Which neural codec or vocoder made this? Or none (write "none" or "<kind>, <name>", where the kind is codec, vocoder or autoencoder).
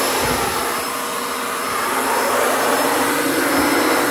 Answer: none